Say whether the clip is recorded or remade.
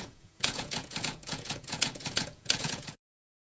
remade